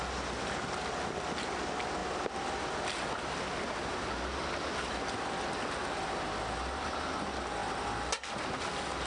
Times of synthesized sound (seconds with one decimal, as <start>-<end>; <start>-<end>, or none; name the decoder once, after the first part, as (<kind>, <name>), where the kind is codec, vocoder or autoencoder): none